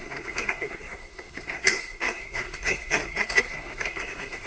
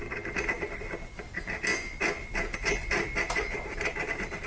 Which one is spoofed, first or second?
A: first